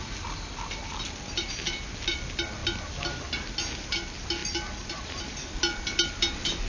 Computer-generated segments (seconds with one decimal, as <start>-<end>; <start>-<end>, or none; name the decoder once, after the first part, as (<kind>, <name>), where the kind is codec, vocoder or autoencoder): 2.6-3.3 (vocoder, BigVGAN v2); 4.4-5.2